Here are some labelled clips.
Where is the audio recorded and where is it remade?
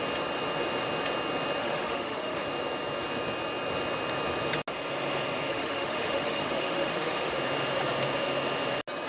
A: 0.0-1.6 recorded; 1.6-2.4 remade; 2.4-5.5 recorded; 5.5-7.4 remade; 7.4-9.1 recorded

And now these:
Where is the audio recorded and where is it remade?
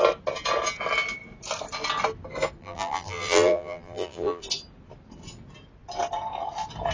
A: 0.0-2.6 recorded; 2.6-4.4 remade; 4.4-6.9 recorded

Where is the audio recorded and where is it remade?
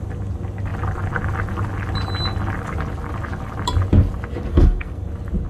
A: 0.0-4.5 recorded; 4.5-5.1 remade; 5.1-5.5 recorded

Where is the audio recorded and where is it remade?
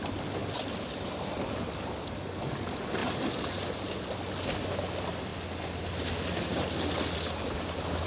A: 0.0-8.1 recorded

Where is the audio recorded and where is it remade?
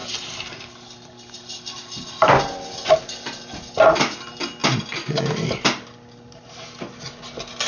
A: 0.0-7.7 recorded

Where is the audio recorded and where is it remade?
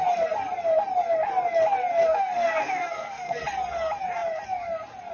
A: 0.0-2.0 recorded; 2.0-3.4 remade; 3.4-5.1 recorded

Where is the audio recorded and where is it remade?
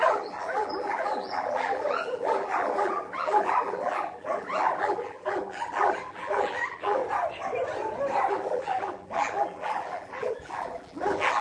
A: 0.0-7.0 remade; 7.0-8.3 recorded; 8.3-11.4 remade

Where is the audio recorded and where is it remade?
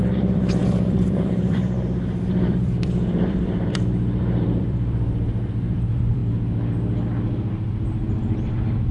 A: 0.0-6.2 remade; 6.2-8.9 recorded